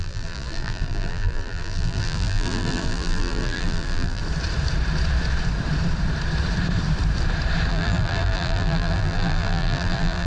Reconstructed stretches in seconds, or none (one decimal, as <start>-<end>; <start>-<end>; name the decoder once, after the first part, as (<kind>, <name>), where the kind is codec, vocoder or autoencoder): 0.0-4.2 (vocoder, BigVGAN v2); 7.7-10.3